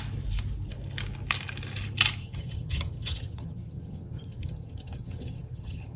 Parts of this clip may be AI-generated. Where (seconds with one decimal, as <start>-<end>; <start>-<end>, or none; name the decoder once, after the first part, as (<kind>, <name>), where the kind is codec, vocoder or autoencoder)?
2.2-6.0 (vocoder, HiFi-GAN)